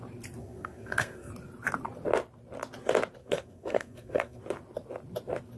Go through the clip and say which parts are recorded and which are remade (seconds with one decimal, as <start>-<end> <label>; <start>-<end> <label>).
0.0-0.4 recorded; 0.4-1.3 remade; 1.3-3.2 recorded; 3.2-4.4 remade; 4.4-5.6 recorded